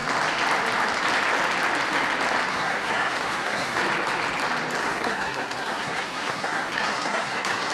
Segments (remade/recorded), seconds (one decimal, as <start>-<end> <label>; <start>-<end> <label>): 0.0-2.5 recorded; 2.5-3.8 remade; 3.8-4.8 recorded; 4.8-7.7 remade